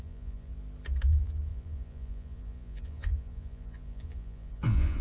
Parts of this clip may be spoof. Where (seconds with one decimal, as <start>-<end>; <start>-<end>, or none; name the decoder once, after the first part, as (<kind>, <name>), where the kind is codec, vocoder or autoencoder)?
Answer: 0.0-0.5 (vocoder, Vocos); 1.1-5.0